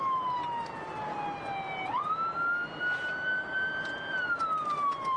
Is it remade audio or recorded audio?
recorded